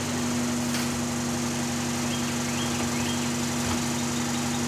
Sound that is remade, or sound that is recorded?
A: recorded